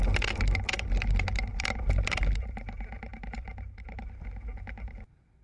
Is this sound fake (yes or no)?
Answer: no